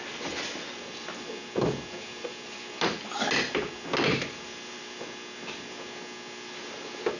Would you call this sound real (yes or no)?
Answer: yes